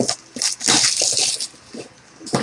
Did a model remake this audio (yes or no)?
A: no